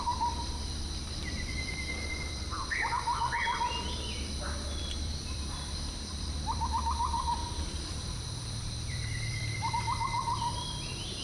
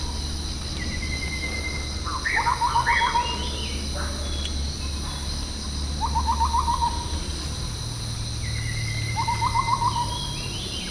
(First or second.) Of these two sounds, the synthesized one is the first